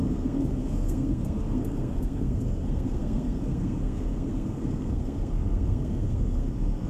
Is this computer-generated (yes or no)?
yes